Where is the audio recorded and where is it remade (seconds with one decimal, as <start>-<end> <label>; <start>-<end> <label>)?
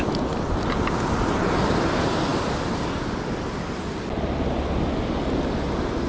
0.0-6.1 recorded